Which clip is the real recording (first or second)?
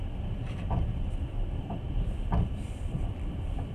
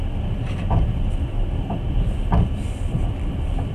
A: second